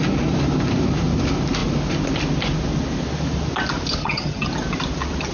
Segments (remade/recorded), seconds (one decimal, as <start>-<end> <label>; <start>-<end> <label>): 0.0-4.0 recorded; 4.0-4.5 remade; 4.5-5.3 recorded